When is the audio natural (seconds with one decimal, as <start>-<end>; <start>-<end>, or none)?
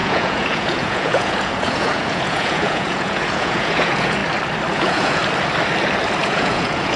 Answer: 4.2-4.7; 5.2-6.2